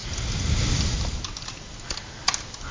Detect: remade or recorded recorded